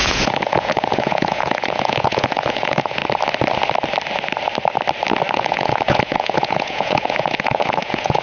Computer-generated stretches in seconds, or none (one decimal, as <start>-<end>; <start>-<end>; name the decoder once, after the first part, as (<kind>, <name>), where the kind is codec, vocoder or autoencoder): 0.0-3.0 (vocoder, Vocos); 5.3-8.2